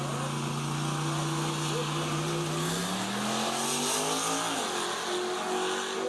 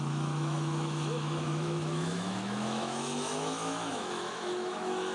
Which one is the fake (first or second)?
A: second